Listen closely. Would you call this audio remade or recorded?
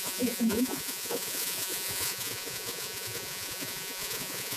remade